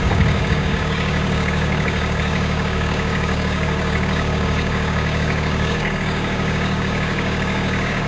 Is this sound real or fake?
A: fake